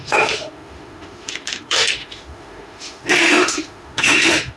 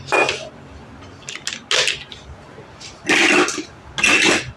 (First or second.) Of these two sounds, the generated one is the first